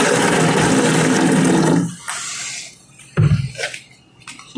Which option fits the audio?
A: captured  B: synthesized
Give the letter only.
A